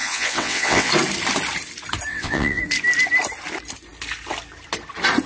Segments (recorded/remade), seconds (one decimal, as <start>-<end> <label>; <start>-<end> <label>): 0.0-0.9 remade; 0.9-2.1 recorded; 2.1-2.6 remade; 2.6-5.3 recorded